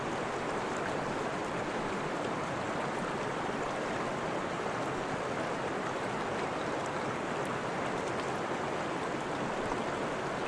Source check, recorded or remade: recorded